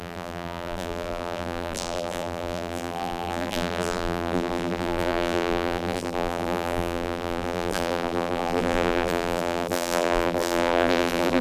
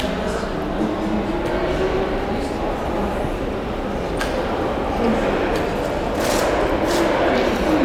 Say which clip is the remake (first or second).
first